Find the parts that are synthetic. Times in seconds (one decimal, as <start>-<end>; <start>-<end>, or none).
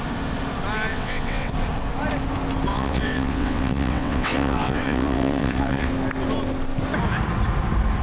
0.9-1.5; 2.7-5.9